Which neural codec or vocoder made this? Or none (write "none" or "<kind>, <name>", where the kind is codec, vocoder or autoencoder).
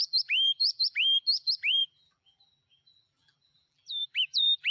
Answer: vocoder, BigVGAN v2